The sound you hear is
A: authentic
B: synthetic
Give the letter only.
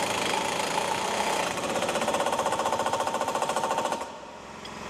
B